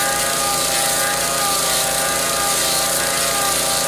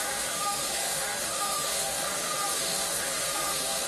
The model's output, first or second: second